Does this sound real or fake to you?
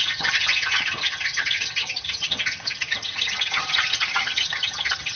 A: fake